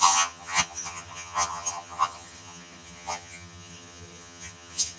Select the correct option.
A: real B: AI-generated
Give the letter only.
B